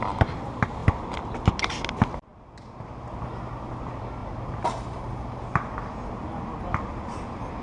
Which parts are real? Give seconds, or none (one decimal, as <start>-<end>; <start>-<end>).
0.0-4.2; 5.4-7.6